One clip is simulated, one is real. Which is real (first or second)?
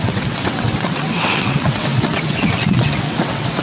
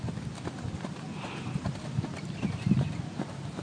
second